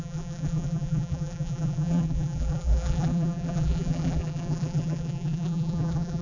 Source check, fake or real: fake